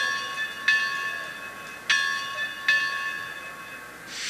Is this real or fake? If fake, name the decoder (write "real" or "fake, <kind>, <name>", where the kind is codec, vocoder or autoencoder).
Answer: real